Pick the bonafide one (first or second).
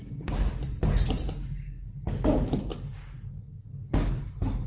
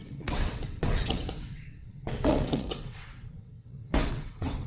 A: first